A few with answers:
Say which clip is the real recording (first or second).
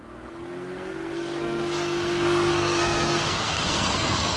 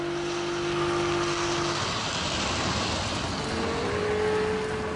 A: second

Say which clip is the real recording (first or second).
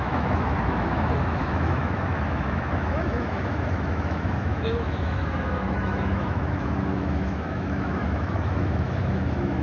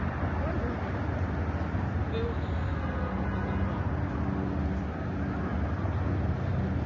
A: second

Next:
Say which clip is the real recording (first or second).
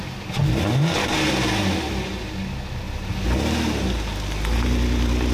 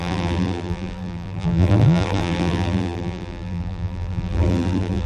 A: first